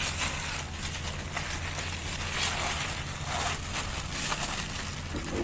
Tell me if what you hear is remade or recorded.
recorded